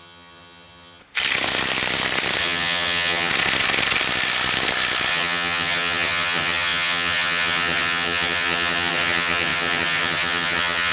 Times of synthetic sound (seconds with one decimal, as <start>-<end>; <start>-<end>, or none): 0.0-1.0; 2.4-3.3; 5.1-10.9

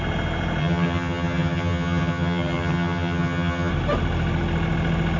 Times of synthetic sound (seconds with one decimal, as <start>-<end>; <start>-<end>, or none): 0.6-3.7

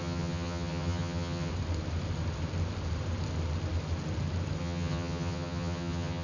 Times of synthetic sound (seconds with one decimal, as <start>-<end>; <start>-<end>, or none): 0.0-1.5; 4.6-6.2

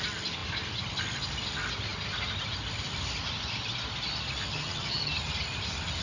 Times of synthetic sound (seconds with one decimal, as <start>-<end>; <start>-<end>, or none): 4.5-5.1

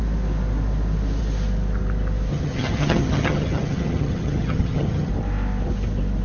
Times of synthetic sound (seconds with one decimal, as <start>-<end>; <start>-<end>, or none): 2.3-5.1

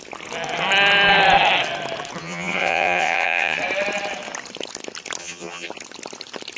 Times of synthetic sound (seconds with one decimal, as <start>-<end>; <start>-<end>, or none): 2.2-3.6; 5.2-5.7

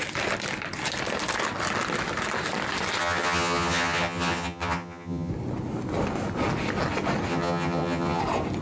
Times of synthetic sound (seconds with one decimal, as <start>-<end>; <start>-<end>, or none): 3.0-5.3; 7.3-8.2